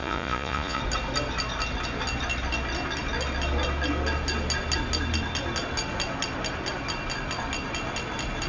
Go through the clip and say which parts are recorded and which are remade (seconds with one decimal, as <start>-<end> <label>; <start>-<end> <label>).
0.0-0.8 remade; 0.8-8.5 recorded